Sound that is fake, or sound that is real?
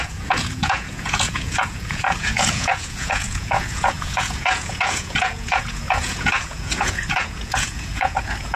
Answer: fake